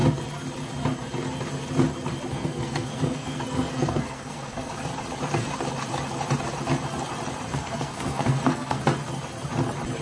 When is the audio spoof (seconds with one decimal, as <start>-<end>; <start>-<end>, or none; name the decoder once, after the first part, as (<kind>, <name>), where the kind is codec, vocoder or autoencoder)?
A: 2.3-4.7 (codec, SNAC); 7.5-8.8